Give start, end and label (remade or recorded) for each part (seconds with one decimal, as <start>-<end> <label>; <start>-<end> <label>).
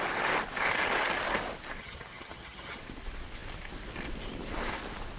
0.0-1.8 recorded; 1.8-2.8 remade; 2.8-5.2 recorded